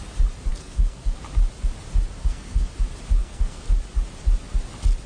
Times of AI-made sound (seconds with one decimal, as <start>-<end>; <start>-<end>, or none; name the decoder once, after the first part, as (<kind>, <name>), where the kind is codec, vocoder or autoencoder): 0.5-1.2 (codec, SNAC); 2.2-2.7; 3.2-3.7